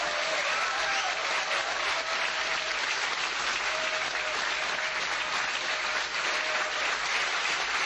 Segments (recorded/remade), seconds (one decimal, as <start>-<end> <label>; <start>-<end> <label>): 0.0-7.9 recorded